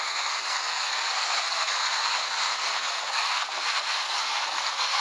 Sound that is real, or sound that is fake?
fake